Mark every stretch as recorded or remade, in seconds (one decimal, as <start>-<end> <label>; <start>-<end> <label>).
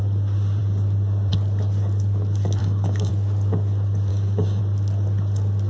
0.0-2.6 recorded; 2.6-3.1 remade; 3.1-4.1 recorded; 4.1-4.6 remade; 4.6-5.7 recorded